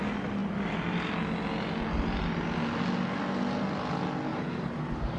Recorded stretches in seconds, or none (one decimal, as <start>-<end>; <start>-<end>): 0.0-4.3